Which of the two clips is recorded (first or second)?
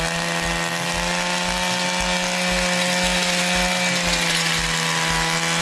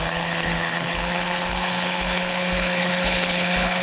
first